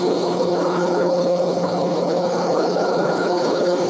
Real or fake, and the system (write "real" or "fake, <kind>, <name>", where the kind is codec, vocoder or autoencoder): fake, codec, HILCodec